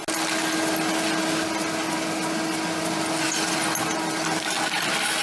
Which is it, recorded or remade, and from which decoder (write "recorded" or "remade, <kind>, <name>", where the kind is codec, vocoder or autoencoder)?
recorded